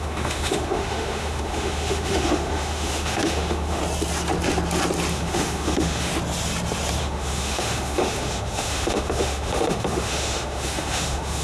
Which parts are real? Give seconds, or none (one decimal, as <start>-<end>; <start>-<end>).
3.8-5.1; 6.1-7.0